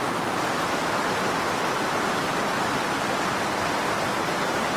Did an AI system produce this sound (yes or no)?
no